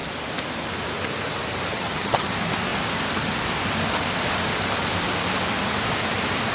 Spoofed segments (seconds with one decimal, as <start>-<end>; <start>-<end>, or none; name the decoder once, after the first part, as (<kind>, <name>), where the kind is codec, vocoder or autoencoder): 1.7-2.3 (vocoder, HiFi-GAN)